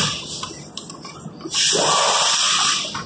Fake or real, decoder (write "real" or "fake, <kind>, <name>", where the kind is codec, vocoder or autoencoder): real